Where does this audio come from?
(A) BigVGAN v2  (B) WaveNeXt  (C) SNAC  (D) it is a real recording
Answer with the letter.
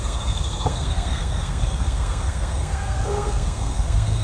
C